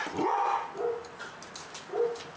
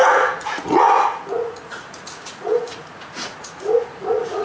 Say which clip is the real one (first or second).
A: first